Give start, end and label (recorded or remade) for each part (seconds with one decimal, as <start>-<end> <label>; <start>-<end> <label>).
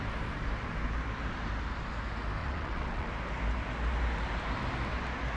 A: 0.0-2.4 recorded; 2.4-3.1 remade; 3.1-5.4 recorded